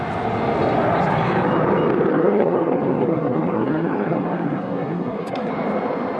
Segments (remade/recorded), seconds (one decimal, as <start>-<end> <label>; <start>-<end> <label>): 0.0-2.1 recorded; 2.1-5.5 remade; 5.5-6.2 recorded